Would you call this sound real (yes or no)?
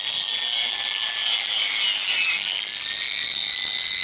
yes